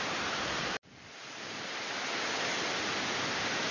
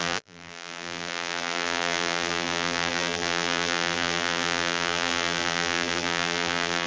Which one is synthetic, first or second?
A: second